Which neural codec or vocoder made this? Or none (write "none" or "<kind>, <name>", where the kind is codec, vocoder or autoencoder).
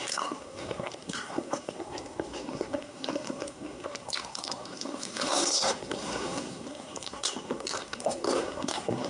codec, SNAC